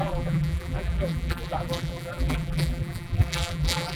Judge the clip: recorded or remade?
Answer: remade